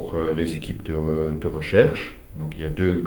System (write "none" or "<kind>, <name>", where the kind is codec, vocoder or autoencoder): autoencoder, DAC-VAE